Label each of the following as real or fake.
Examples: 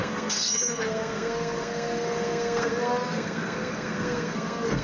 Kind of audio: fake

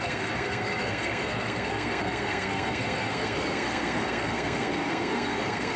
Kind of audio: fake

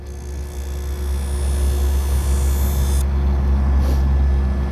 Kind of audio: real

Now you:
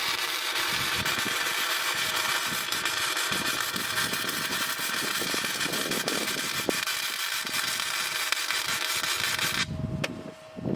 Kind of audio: real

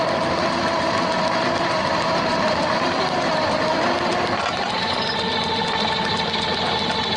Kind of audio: real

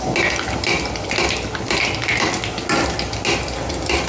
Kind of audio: real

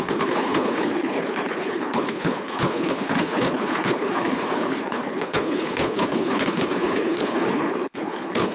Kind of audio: fake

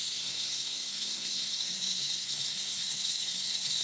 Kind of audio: fake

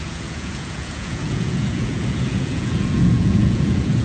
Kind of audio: fake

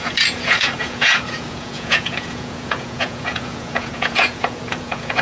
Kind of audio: fake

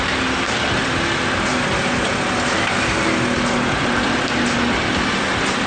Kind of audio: real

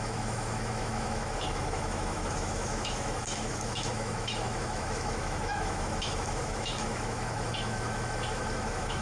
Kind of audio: fake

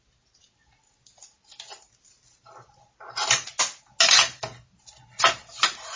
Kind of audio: real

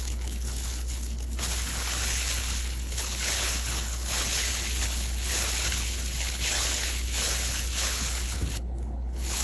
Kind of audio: fake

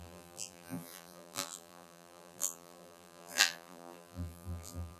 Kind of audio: fake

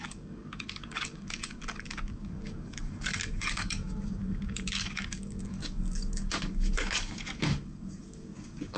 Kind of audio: fake